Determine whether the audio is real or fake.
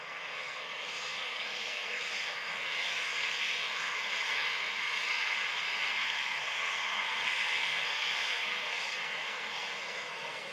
fake